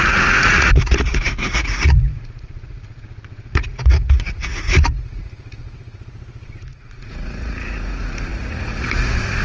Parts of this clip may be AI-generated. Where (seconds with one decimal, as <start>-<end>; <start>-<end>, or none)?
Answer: 0.0-9.4